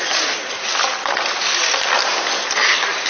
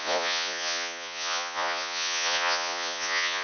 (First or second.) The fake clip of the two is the second